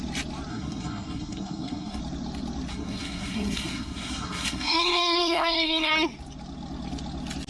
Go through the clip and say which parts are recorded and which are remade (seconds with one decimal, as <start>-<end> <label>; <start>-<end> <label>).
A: 0.0-0.5 recorded; 0.5-2.0 remade; 2.0-2.7 recorded; 2.7-5.9 remade; 5.9-7.5 recorded